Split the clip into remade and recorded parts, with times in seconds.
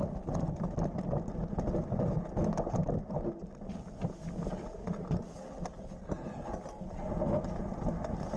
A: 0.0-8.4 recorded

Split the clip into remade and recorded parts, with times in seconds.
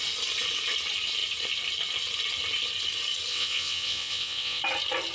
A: 0.0-3.3 recorded; 3.3-4.6 remade; 4.6-5.1 recorded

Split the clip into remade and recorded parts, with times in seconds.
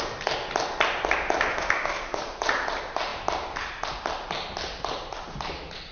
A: 0.0-1.5 recorded; 1.5-2.2 remade; 2.2-5.9 recorded